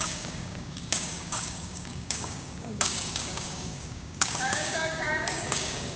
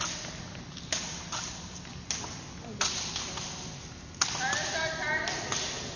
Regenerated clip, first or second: first